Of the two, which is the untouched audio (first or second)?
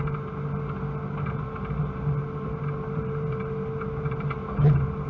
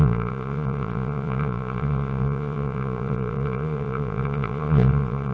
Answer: first